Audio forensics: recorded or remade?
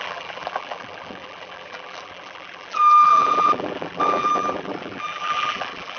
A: remade